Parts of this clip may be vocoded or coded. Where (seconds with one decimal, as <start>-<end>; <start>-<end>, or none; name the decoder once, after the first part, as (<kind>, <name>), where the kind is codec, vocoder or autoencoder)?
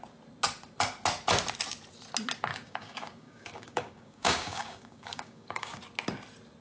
2.5-5.8 (codec, DAC)